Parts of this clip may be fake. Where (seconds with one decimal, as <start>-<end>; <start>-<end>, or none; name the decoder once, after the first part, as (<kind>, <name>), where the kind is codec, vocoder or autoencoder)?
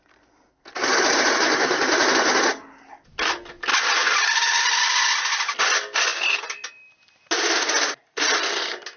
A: none